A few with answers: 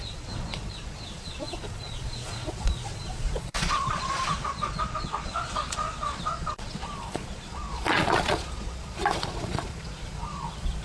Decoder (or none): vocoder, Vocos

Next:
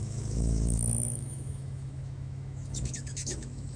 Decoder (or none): autoencoder, DAC-VAE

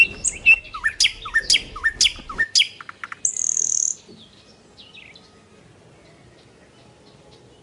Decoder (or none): none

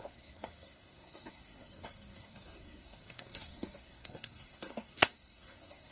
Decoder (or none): codec, SNAC